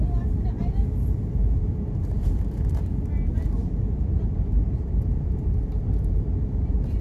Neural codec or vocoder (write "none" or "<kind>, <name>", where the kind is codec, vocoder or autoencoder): vocoder, BigVGAN v2